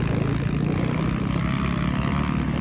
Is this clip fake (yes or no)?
no